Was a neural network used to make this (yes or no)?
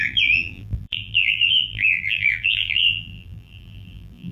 yes